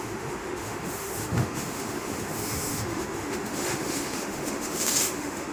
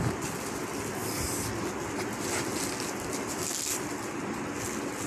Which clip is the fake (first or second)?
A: first